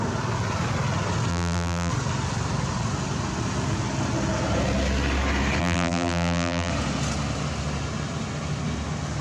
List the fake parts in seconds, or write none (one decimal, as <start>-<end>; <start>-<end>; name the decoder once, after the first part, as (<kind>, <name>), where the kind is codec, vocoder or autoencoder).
1.3-1.9 (vocoder, BigVGAN v2); 5.6-6.7